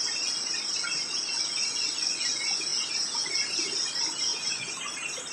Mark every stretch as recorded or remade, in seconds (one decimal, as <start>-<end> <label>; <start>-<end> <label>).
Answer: 0.0-1.7 recorded; 1.7-2.3 remade; 2.3-4.3 recorded; 4.3-4.8 remade; 4.8-5.3 recorded